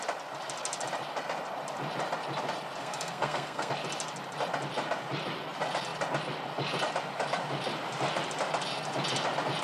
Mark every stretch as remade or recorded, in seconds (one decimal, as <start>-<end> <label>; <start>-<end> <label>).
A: 0.0-2.8 recorded; 2.8-3.7 remade; 3.7-9.6 recorded